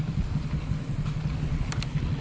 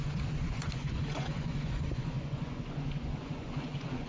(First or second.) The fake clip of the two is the second